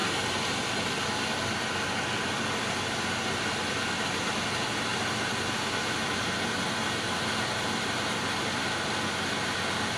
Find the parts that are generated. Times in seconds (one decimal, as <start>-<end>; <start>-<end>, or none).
none

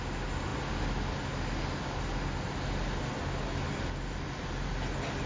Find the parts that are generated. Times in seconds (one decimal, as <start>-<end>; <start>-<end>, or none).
none

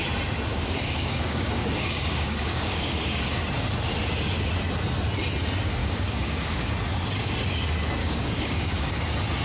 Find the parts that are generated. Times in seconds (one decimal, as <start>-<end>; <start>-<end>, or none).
0.5-3.2; 5.8-6.7; 8.0-8.9

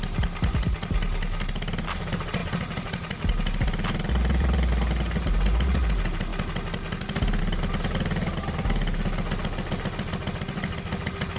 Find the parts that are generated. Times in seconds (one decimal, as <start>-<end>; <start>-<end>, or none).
none